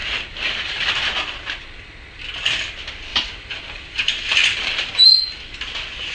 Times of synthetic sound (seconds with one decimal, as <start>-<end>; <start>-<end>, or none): 0.0-0.9; 3.1-4.9